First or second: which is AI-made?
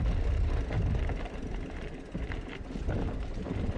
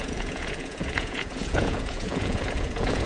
second